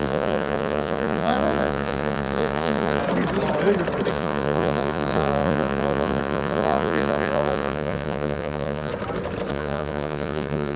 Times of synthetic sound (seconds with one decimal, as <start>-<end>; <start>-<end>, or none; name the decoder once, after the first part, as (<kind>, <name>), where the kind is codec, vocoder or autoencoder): 0.0-3.0 (vocoder, Vocos); 4.1-8.9; 9.5-10.8